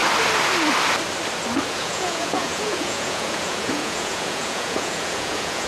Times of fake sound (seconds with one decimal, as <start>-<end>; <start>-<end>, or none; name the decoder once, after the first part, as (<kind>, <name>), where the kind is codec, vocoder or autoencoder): 1.7-5.7 (vocoder, Vocos)